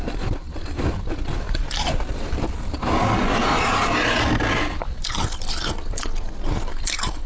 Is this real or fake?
real